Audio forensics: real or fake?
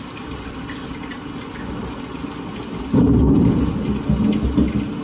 real